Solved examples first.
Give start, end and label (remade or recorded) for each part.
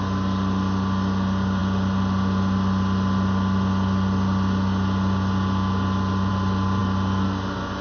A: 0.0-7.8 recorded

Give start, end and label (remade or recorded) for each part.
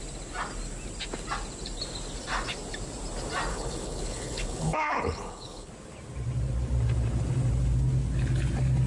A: 0.0-3.5 recorded; 3.5-5.7 remade; 5.7-8.9 recorded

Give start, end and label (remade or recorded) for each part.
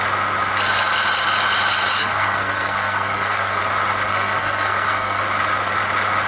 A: 0.0-2.0 recorded; 2.0-3.6 remade; 3.6-4.1 recorded; 4.1-5.2 remade; 5.2-6.3 recorded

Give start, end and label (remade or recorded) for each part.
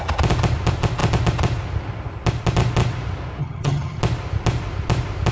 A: 0.0-3.4 recorded; 3.4-4.0 remade; 4.0-5.3 recorded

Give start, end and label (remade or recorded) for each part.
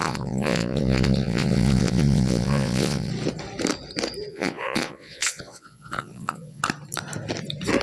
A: 0.0-3.1 remade; 3.1-4.3 recorded; 4.3-6.6 remade; 6.6-7.8 recorded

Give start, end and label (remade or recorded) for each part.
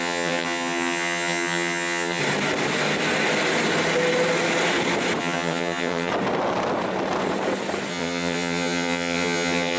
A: 0.0-2.2 remade; 2.2-5.2 recorded; 5.2-6.1 remade; 6.1-7.9 recorded; 7.9-9.8 remade